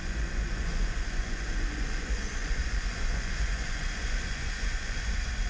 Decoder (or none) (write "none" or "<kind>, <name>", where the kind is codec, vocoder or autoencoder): vocoder, Vocos